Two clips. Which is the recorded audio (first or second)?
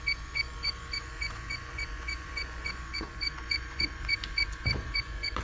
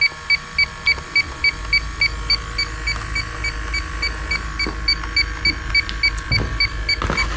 second